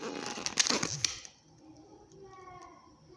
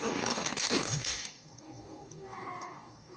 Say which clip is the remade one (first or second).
second